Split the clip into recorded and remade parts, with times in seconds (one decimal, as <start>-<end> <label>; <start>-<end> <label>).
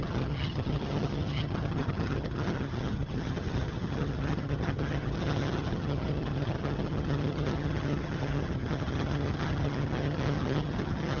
0.0-11.2 remade